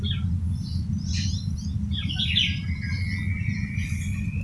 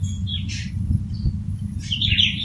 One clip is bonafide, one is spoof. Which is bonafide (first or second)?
first